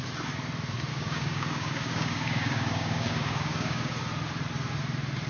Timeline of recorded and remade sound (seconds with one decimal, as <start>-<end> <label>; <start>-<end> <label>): 0.0-0.9 recorded; 0.9-3.9 remade; 3.9-5.3 recorded